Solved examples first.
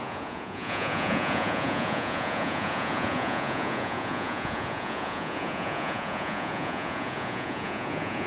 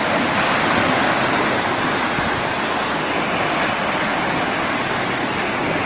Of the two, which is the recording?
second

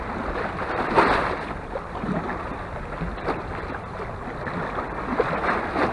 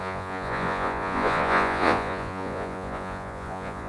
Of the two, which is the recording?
first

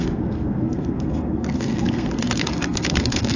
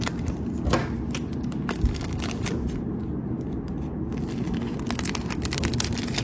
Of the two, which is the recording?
second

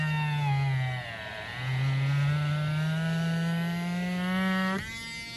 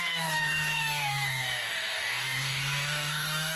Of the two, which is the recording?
first